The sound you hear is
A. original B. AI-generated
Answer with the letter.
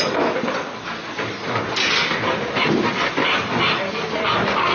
A